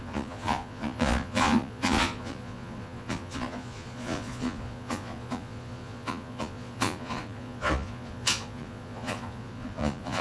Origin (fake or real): fake